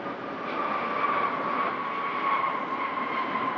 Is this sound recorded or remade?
recorded